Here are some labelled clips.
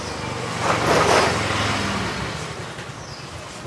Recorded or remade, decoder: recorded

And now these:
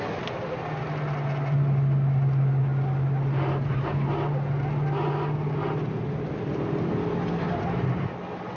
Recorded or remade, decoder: recorded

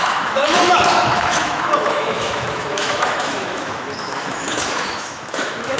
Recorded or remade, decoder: remade, autoencoder, DAC-VAE